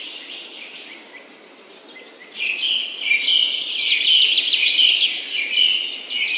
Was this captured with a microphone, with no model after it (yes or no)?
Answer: yes